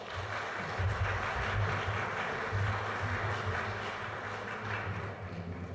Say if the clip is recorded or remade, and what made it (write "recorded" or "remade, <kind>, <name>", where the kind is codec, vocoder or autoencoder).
recorded